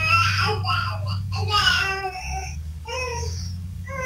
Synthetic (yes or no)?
yes